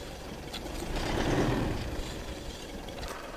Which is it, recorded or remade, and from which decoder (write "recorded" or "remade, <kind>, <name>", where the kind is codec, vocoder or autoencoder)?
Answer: remade, vocoder, BigVGAN v2